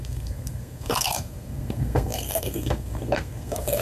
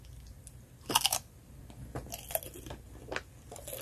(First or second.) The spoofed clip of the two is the first